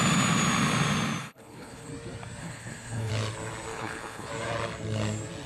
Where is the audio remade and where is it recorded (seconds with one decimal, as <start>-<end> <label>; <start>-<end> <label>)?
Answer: 0.0-1.2 recorded; 1.2-1.9 remade; 1.9-2.4 recorded; 2.4-3.1 remade; 3.1-3.7 recorded; 3.7-4.3 remade; 4.3-5.5 recorded